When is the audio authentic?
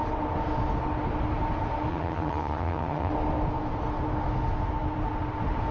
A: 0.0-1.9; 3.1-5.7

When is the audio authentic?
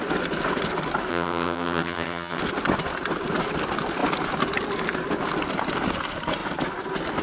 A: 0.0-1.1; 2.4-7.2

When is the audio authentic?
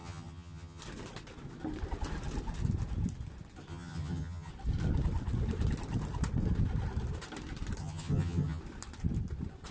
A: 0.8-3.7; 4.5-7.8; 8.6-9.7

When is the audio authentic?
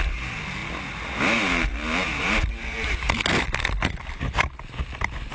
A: 0.0-5.3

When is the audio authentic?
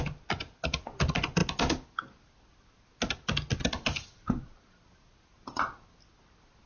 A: 0.0-6.7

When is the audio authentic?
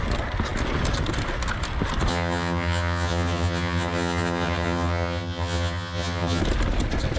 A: 0.0-2.1; 6.4-7.2